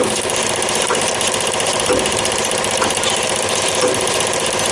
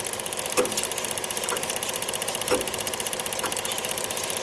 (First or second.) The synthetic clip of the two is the first